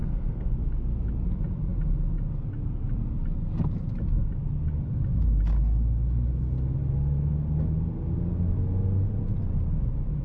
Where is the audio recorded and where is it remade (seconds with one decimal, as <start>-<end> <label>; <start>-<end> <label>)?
0.0-0.7 remade; 0.7-10.2 recorded